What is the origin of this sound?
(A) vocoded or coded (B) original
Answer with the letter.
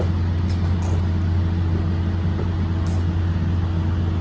B